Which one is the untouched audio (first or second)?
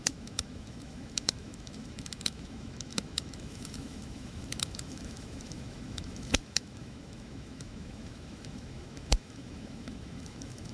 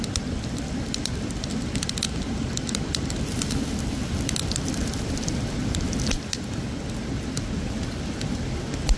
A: second